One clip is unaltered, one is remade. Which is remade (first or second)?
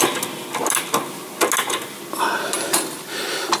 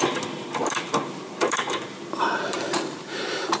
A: second